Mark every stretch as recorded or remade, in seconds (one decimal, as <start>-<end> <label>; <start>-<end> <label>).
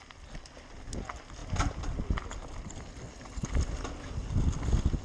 0.0-5.0 recorded